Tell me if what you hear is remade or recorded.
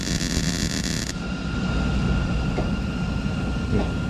recorded